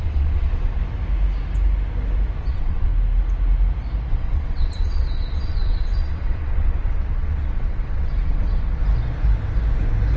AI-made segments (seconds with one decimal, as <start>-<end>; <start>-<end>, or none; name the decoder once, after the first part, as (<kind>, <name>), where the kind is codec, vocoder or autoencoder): 0.0-0.8 (vocoder, WaveNeXt); 2.5-2.9; 4.1-8.8